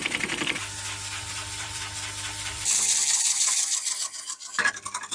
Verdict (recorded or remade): remade